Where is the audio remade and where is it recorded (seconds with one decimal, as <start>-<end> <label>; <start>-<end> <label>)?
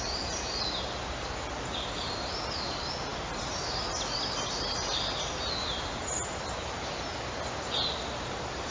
0.0-8.7 recorded